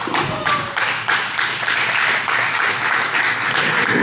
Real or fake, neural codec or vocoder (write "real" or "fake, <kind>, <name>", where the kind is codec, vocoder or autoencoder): real